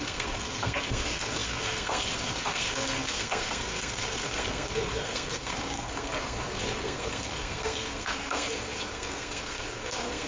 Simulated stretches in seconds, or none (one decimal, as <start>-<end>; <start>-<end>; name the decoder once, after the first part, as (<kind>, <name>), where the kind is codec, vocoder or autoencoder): 0.0-10.3 (codec, SNAC)

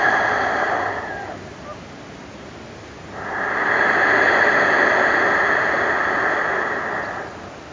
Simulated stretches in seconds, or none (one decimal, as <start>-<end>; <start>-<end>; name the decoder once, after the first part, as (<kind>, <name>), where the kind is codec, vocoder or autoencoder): none

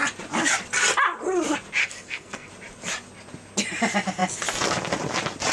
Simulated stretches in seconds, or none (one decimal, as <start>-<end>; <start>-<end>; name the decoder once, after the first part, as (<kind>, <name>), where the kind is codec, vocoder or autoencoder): 1.8-2.5 (codec, SNAC)

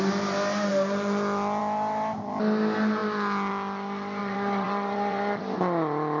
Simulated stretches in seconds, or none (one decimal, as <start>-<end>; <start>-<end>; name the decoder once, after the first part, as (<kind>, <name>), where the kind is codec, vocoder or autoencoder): 4.2-5.4 (vocoder, Vocos)

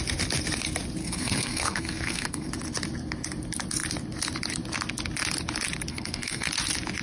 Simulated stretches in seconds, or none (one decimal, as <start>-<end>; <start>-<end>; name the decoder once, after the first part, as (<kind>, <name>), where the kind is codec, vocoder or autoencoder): 1.0-2.5 (codec, SNAC); 5.9-6.5

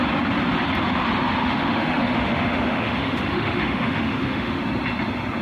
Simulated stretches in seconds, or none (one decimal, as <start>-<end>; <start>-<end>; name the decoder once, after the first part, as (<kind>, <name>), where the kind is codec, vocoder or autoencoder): 1.4-4.6 (autoencoder, DAC-VAE)

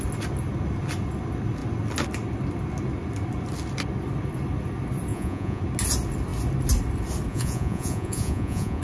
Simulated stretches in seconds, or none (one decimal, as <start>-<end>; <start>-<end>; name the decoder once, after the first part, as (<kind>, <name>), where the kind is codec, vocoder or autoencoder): 5.1-5.6 (vocoder, Vocos); 7.3-8.8